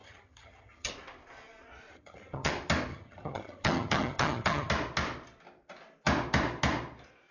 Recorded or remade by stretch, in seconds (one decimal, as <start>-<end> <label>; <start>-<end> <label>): 0.0-0.9 remade; 0.9-1.9 recorded; 1.9-2.5 remade; 2.5-2.9 recorded; 2.9-4.7 remade; 4.7-7.3 recorded